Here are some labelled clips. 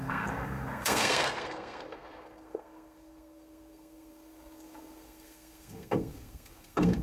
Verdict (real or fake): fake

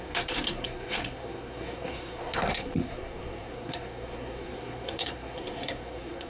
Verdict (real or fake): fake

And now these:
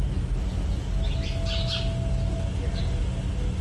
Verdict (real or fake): real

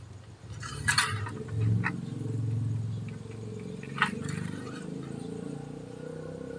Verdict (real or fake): real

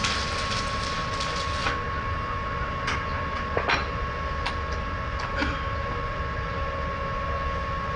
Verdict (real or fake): real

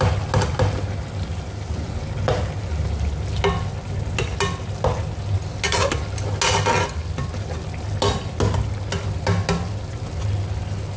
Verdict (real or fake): real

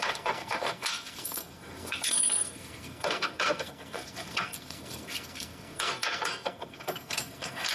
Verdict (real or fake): fake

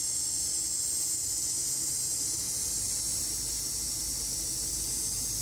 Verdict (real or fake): real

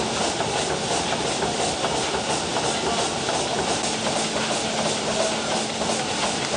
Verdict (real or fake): real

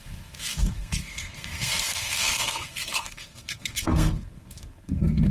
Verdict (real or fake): fake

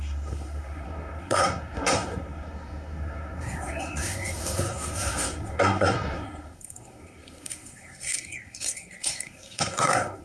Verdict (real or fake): fake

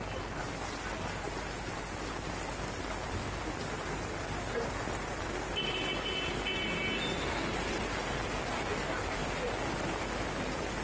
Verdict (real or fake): real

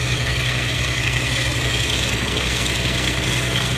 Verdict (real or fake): fake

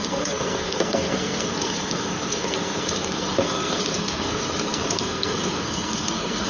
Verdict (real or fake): fake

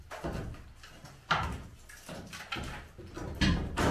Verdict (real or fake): real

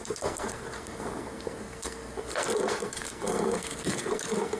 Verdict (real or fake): fake